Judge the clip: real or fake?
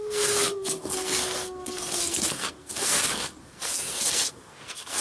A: fake